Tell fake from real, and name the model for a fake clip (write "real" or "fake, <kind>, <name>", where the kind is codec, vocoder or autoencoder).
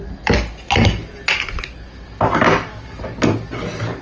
real